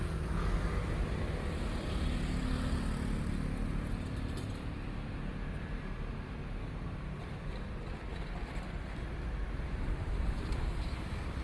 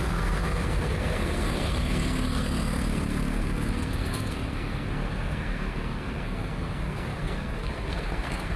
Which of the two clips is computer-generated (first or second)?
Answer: second